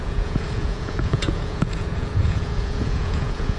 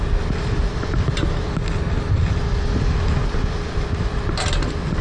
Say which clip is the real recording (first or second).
second